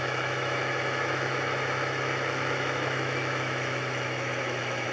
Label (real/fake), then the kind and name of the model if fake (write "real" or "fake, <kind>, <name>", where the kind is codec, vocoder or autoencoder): fake, autoencoder, DAC-VAE